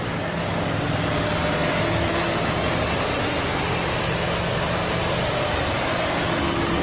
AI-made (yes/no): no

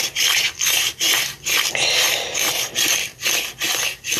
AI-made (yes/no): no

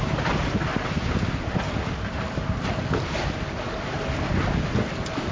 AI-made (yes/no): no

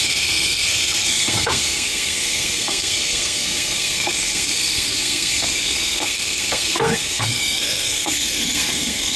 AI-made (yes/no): yes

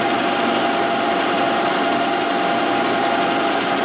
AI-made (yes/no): no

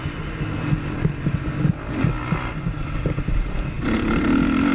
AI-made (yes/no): no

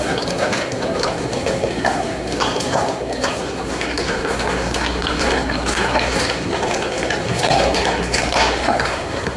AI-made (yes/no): yes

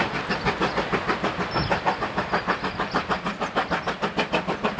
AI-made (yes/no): no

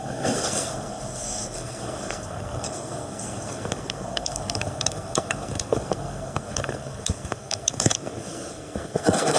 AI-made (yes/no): yes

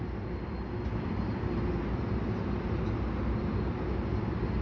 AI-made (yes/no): no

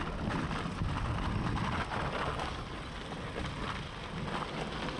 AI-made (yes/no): no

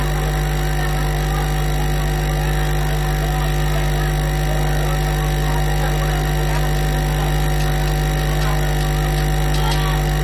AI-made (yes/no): no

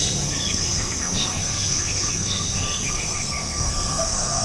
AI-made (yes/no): yes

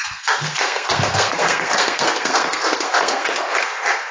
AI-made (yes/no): yes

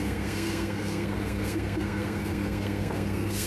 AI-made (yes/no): yes